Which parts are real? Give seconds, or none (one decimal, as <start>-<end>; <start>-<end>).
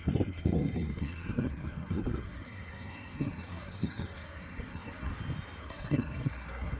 5.1-5.6